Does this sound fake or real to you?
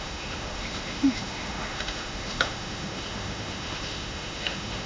fake